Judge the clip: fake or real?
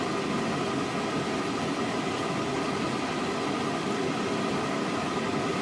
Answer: real